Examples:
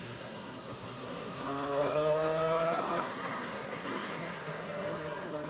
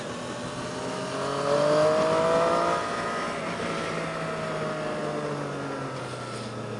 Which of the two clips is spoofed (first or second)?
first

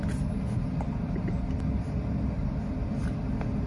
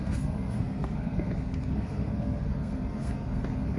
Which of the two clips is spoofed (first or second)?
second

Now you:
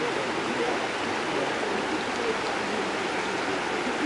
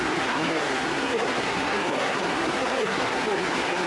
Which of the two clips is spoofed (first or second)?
second